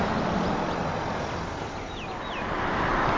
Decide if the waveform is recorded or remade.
recorded